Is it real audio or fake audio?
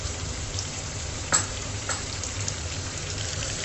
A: fake